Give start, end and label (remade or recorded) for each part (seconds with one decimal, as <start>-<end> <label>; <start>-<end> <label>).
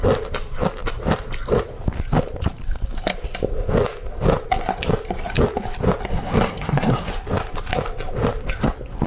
0.0-6.1 recorded; 6.1-7.1 remade; 7.1-9.1 recorded